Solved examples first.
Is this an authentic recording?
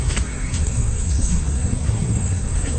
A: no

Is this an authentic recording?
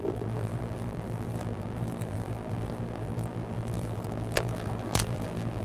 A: no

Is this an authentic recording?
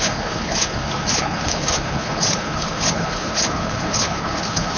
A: no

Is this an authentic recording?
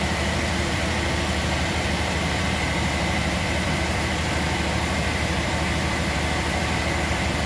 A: no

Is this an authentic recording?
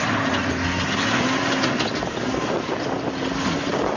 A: yes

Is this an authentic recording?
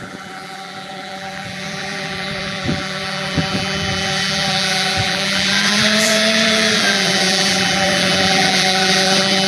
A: no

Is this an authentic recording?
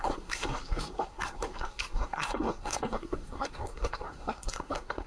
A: no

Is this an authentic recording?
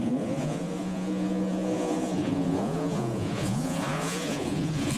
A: no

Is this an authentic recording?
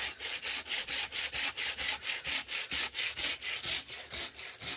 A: yes